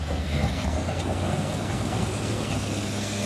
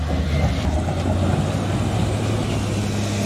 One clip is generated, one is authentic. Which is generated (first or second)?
first